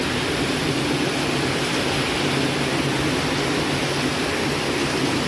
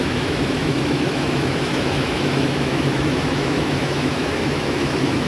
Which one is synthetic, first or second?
second